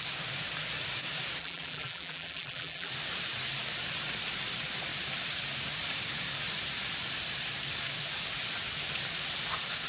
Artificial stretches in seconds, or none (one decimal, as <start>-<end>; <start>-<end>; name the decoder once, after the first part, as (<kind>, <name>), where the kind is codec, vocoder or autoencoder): 1.4-2.9 (vocoder, BigVGAN v2)